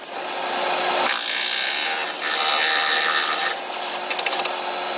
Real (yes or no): yes